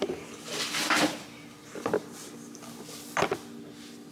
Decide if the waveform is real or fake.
real